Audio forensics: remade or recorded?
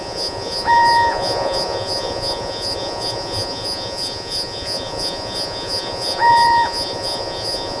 remade